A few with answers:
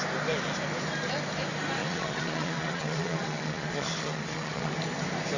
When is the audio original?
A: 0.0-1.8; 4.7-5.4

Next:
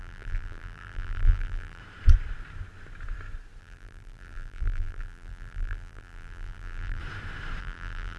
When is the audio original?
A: 1.8-3.6; 7.0-7.6

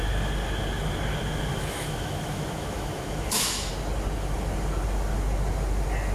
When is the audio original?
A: 0.0-1.5; 3.7-6.1

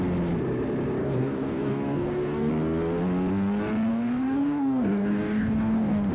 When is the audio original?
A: 0.0-1.0; 2.5-3.9

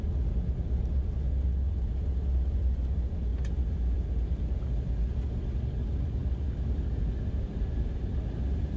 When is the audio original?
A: 0.0-1.9; 2.7-3.3; 4.6-6.2; 8.1-8.8

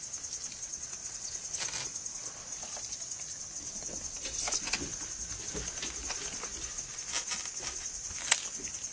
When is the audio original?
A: 0.0-8.9

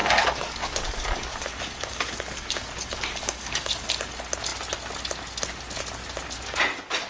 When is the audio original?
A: 4.1-7.1